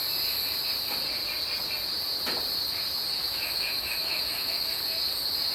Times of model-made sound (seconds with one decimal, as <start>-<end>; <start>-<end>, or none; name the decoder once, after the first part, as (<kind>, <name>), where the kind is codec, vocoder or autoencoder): 3.2-4.8 (autoencoder, DAC-VAE)